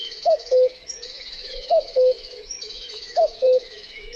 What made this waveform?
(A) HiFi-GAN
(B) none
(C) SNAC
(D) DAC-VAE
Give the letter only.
D